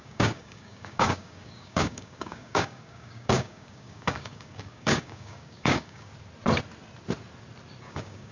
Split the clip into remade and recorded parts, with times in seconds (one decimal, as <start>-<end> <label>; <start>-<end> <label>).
0.0-6.1 remade; 6.1-7.8 recorded; 7.8-8.3 remade